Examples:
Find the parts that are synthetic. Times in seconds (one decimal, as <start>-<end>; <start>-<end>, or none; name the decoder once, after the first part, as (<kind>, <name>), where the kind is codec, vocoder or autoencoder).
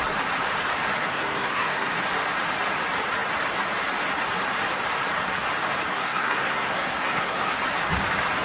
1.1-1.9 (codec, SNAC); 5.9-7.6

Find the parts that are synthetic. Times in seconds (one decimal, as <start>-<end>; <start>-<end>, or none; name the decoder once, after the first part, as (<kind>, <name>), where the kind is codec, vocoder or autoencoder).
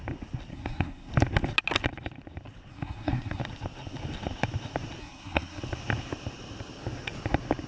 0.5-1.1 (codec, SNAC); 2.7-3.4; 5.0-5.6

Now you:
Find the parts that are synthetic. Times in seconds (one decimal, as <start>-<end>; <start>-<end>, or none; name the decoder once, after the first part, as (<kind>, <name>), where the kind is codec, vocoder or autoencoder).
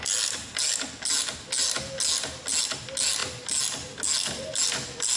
none